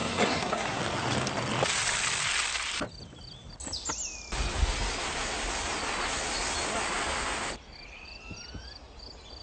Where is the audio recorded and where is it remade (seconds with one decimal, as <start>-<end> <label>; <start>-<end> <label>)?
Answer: 0.0-0.8 remade; 0.8-9.4 recorded